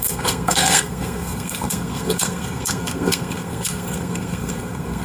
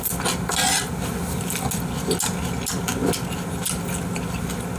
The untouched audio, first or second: second